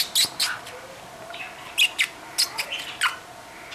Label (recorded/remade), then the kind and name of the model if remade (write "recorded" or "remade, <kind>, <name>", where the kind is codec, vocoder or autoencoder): recorded